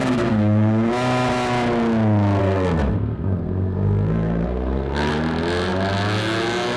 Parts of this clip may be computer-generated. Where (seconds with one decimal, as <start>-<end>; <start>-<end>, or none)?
0.0-0.9; 2.4-5.1